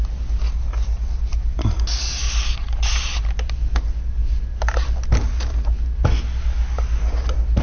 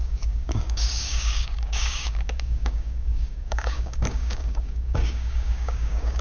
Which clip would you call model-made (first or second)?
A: second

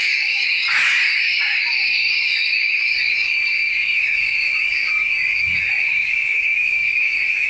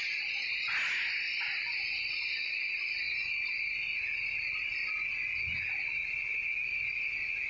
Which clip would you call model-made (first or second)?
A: first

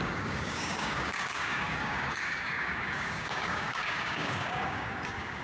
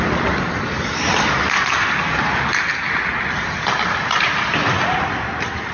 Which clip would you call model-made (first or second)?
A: first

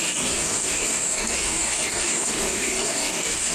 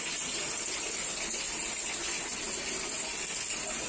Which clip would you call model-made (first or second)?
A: first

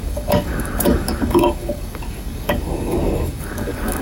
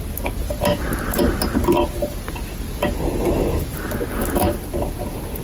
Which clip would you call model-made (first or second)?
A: first